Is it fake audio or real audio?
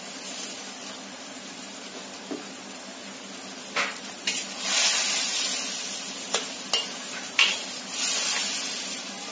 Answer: real